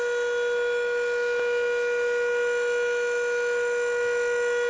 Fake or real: real